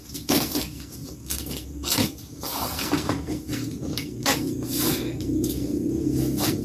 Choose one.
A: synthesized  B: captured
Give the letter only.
A